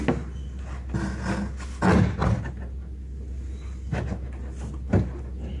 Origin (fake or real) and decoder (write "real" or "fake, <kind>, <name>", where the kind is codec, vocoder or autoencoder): real